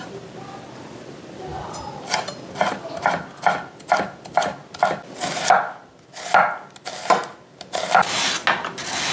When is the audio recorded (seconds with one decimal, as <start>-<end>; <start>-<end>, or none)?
0.0-9.1